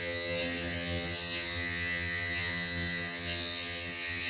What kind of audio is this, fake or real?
fake